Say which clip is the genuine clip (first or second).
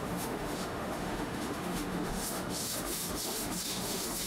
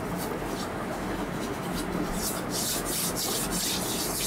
second